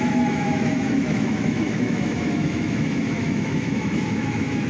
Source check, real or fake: fake